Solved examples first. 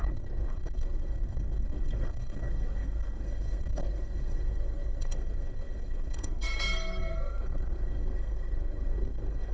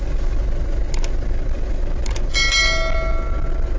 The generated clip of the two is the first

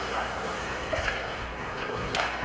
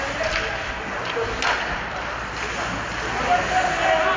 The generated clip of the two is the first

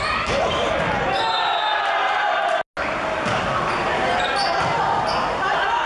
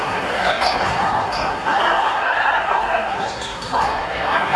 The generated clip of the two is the second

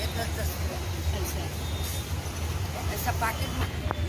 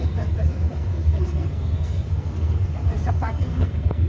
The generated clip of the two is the second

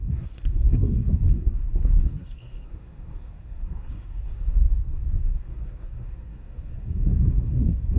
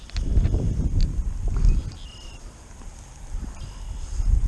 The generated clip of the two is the first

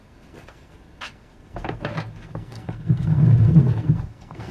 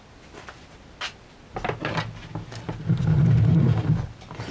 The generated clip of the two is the first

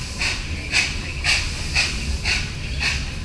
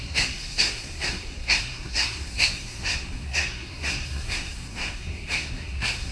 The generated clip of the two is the second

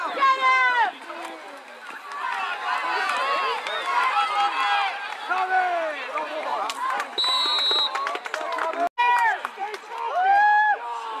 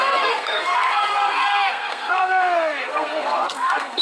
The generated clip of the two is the second